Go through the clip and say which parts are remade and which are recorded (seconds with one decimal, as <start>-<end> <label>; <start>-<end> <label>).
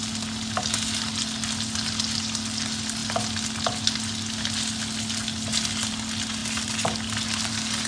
0.0-7.9 recorded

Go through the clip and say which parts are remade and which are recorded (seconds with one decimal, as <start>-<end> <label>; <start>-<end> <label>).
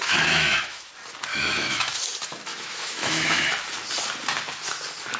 0.0-0.9 remade; 0.9-1.3 recorded; 1.3-2.0 remade; 2.0-2.5 recorded; 2.5-3.5 remade; 3.5-5.2 recorded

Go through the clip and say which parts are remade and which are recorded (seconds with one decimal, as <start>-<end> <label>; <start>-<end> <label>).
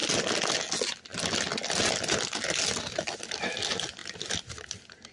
0.0-5.1 recorded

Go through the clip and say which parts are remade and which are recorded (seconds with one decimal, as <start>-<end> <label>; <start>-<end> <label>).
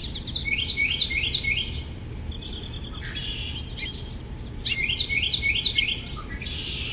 0.0-6.9 recorded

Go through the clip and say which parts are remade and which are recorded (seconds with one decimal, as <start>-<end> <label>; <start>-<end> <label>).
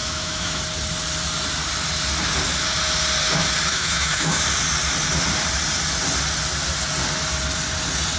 0.0-0.6 remade; 0.6-3.7 recorded; 3.7-4.4 remade; 4.4-8.2 recorded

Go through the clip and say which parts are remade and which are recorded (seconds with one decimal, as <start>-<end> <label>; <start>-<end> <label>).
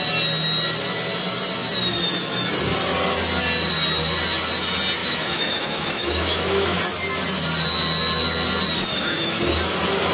0.0-5.0 recorded; 5.0-6.8 remade; 6.8-8.9 recorded; 8.9-9.4 remade; 9.4-10.1 recorded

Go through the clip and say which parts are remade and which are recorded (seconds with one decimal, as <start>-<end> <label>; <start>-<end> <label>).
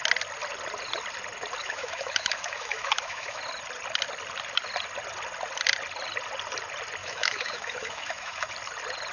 0.0-1.6 recorded; 1.6-3.4 remade; 3.4-7.0 recorded; 7.0-8.5 remade; 8.5-9.1 recorded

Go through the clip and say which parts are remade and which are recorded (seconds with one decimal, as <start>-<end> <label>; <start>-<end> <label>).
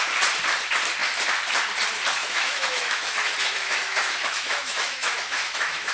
0.0-2.2 recorded; 2.2-5.9 remade